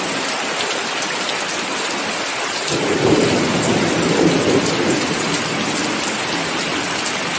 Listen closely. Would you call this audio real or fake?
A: real